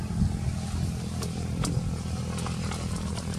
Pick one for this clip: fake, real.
real